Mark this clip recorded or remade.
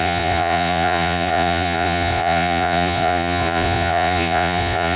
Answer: remade